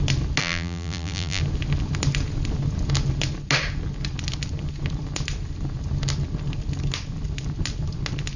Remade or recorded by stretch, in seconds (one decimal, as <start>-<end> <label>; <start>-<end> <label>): 0.0-0.4 recorded; 0.4-1.4 remade; 1.4-8.4 recorded